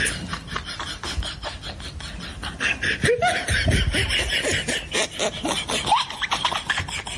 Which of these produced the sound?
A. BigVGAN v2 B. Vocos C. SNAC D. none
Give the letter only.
D